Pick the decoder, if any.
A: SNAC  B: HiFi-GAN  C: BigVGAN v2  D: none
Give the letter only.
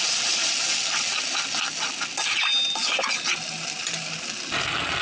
D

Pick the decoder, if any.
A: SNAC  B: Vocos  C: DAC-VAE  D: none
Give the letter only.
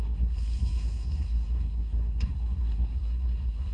A